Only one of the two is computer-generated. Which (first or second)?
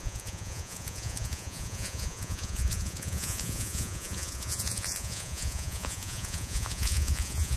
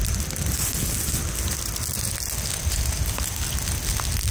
first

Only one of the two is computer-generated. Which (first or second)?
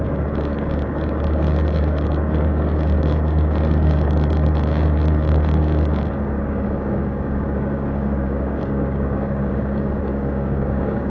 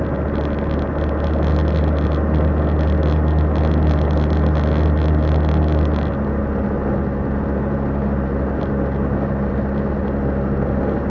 first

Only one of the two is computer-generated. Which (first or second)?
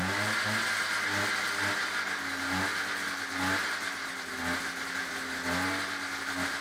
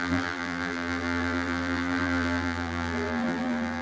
second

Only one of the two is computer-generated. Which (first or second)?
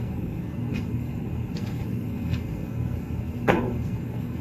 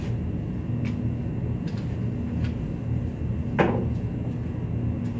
first